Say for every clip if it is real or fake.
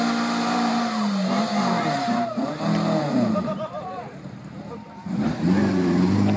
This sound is fake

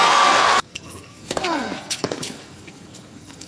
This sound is fake